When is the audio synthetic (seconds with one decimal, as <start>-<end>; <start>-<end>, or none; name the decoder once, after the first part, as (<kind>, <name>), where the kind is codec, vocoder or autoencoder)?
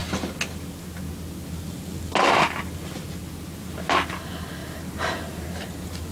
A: 4.6-5.5 (vocoder, BigVGAN v2)